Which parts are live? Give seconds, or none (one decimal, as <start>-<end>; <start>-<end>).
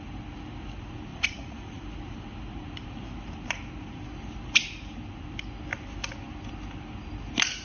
0.0-1.1; 1.8-7.6